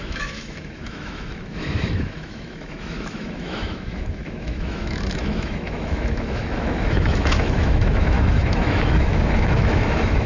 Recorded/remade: remade